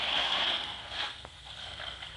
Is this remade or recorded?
remade